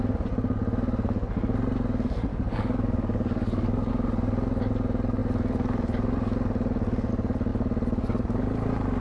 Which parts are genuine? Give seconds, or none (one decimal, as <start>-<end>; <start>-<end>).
0.0-2.3; 3.9-9.0